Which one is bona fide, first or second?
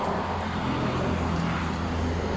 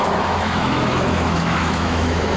first